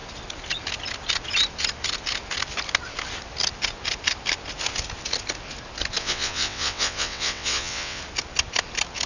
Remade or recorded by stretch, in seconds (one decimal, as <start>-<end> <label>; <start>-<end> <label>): 0.0-6.0 recorded; 6.0-8.0 remade; 8.0-9.1 recorded